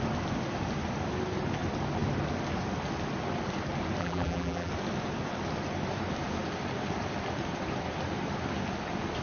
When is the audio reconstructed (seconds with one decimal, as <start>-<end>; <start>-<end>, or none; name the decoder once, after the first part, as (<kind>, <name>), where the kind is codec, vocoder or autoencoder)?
4.0-4.7 (vocoder, BigVGAN v2)